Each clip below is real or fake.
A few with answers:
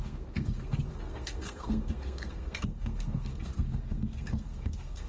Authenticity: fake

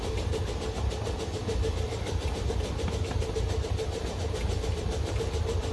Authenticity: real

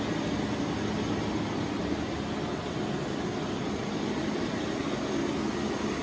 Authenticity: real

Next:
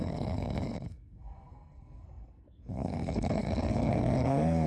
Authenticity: fake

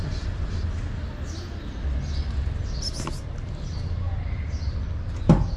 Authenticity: real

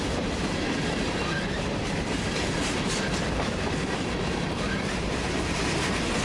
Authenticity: fake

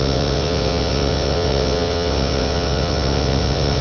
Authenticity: fake